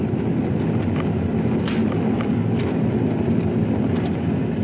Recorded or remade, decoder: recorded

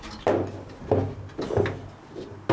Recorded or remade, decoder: recorded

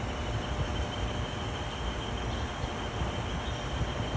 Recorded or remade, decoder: recorded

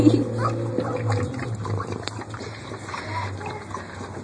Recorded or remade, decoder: recorded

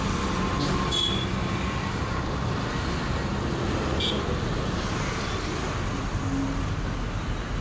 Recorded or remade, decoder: recorded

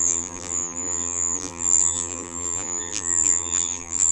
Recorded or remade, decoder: remade, vocoder, BigVGAN v2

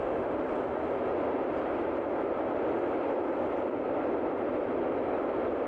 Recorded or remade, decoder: recorded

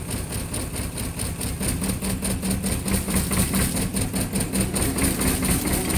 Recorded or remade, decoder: recorded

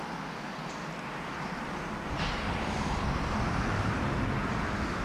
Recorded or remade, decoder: remade, vocoder, BigVGAN v2